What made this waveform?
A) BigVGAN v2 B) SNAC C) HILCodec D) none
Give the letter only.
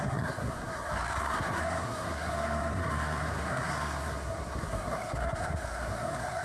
B